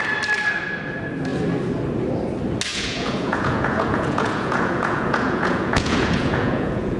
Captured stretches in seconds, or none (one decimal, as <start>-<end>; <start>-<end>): 0.0-2.7